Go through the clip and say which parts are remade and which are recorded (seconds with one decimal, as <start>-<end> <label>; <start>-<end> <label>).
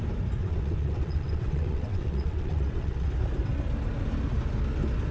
0.0-0.4 recorded; 0.4-3.1 remade; 3.1-5.1 recorded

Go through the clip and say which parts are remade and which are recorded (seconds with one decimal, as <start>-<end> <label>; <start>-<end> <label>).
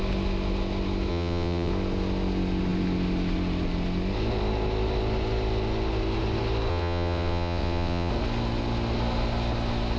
0.0-1.1 recorded; 1.1-1.7 remade; 1.7-6.7 recorded; 6.7-8.1 remade; 8.1-10.0 recorded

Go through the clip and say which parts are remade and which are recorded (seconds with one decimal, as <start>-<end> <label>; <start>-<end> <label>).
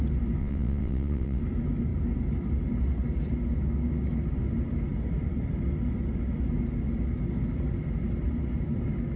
0.0-0.4 recorded; 0.4-1.4 remade; 1.4-9.2 recorded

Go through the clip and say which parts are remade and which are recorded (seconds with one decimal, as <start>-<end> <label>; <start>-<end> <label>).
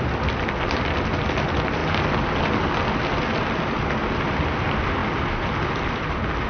0.0-6.5 recorded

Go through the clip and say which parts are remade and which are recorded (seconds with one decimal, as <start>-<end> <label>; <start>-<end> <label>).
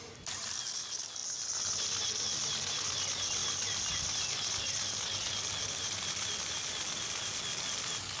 0.0-8.2 recorded